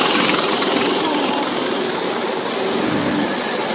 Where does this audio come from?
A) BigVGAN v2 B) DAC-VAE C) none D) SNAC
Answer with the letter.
C